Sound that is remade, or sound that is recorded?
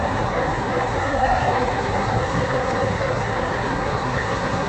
remade